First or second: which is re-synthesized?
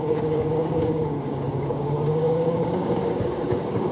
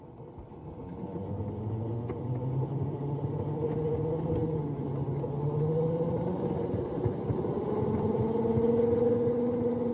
first